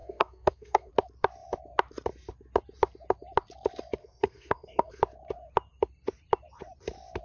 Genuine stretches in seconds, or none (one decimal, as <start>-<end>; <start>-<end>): 0.9-4.0; 5.0-7.2